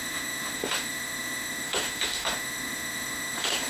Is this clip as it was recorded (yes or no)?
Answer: no